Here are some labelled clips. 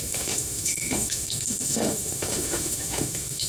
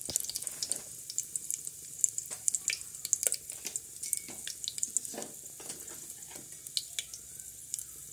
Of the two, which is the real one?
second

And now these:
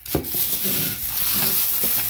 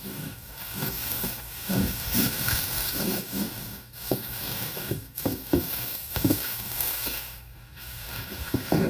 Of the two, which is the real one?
first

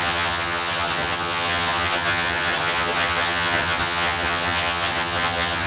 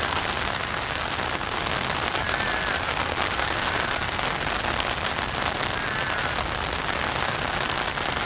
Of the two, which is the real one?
second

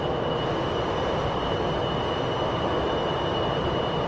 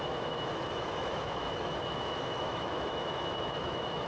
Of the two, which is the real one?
first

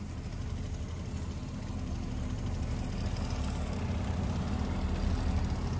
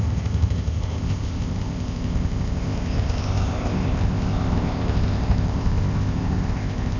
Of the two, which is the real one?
first